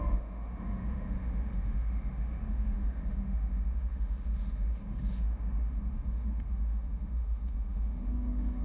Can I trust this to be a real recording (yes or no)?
no